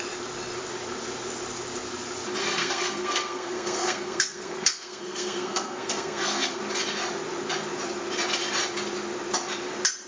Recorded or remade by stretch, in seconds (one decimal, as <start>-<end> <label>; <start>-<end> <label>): 0.0-2.4 recorded; 2.4-6.6 remade; 6.6-10.1 recorded